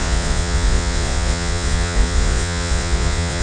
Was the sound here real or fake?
fake